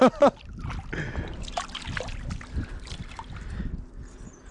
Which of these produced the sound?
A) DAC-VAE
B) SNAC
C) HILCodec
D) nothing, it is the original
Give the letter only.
D